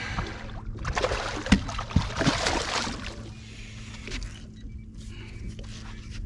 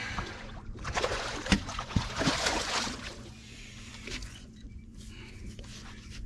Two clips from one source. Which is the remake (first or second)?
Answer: second